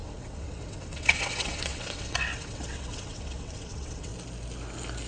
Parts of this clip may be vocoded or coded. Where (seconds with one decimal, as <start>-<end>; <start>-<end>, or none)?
0.0-4.1

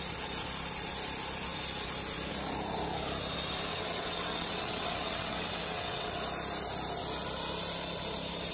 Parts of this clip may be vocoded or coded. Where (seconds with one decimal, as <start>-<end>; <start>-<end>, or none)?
3.7-6.1

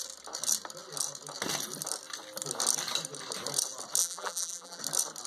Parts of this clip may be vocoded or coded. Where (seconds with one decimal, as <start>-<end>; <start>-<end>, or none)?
4.0-4.8

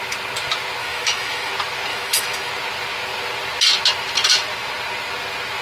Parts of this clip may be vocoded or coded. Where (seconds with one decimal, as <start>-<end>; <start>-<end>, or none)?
0.8-1.5; 1.9-2.5

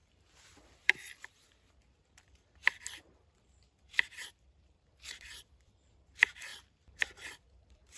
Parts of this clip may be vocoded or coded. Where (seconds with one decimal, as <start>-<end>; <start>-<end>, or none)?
0.0-6.5; 7.0-8.0

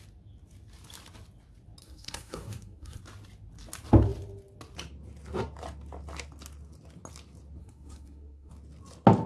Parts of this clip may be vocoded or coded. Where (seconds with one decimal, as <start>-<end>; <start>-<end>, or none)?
1.8-3.0; 7.6-8.5

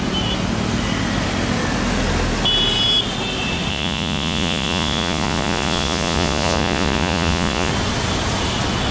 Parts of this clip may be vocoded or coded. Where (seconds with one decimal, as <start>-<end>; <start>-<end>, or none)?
3.7-7.7